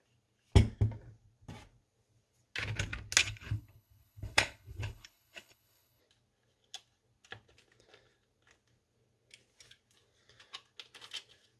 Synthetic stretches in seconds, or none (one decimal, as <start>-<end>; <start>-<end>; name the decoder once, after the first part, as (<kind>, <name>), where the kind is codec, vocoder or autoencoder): 3.2-6.0 (codec, HILCodec)

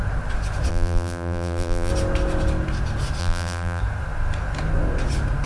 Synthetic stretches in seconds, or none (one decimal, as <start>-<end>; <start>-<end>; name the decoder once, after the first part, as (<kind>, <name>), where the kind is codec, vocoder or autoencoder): 0.7-1.9 (vocoder, BigVGAN v2); 3.2-3.8

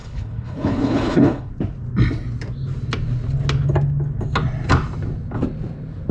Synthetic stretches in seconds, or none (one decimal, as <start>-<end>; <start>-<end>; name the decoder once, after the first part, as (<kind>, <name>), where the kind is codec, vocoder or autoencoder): 0.0-1.5 (codec, HILCodec)

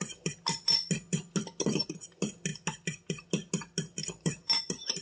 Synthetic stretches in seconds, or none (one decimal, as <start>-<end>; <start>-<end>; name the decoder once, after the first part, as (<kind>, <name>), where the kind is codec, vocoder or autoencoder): 4.0-4.6 (vocoder, BigVGAN v2)

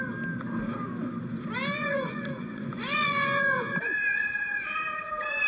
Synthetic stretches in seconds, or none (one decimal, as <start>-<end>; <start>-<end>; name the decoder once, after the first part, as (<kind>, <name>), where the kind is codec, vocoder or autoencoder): 1.8-5.1 (vocoder, Vocos)

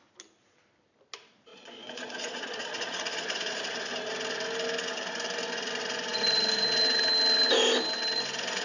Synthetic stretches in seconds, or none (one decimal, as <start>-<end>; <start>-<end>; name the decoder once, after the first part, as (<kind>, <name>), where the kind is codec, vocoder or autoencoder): 1.5-3.6 (vocoder, Vocos)

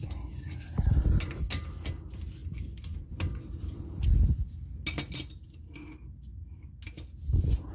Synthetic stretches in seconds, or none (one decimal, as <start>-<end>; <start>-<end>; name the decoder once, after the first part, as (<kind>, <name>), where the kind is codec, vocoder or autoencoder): none